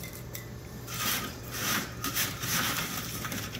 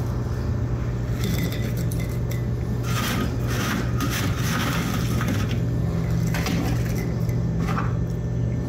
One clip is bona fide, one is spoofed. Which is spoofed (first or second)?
first